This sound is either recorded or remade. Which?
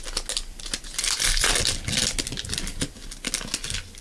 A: recorded